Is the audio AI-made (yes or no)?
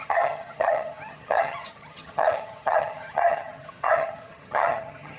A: yes